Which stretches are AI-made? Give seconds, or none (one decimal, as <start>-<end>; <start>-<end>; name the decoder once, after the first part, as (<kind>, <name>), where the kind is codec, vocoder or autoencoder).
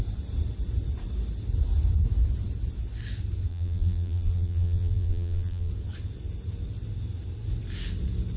3.5-5.7 (vocoder, BigVGAN v2)